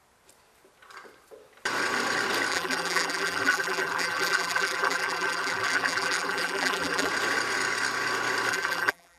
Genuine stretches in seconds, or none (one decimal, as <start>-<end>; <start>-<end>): 0.0-2.5; 7.1-8.5